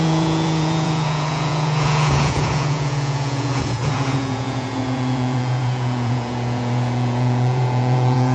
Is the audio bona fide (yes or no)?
no